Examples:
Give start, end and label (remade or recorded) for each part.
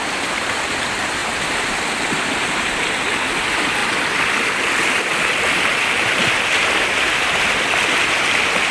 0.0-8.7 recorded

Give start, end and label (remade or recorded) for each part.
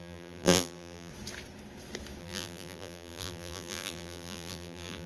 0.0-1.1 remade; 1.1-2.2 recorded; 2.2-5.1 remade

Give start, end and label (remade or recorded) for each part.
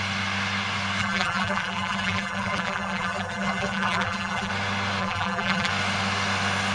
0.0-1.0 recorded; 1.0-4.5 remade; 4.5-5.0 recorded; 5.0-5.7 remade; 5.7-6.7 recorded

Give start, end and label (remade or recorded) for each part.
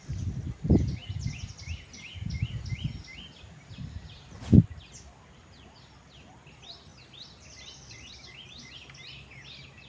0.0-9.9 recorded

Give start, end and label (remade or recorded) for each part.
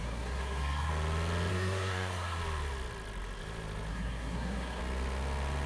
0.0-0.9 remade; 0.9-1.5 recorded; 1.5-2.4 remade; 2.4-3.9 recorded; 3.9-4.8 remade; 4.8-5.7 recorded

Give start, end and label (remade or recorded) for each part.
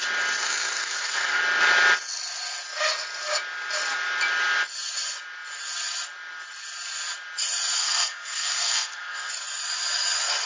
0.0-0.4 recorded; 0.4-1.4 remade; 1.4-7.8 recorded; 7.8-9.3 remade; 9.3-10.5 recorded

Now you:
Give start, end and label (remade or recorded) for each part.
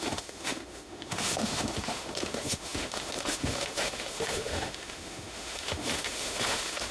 0.0-6.9 remade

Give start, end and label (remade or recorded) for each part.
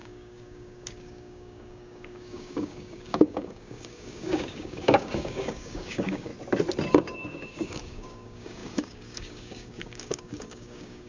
0.0-6.3 remade; 6.3-6.9 recorded; 6.9-11.1 remade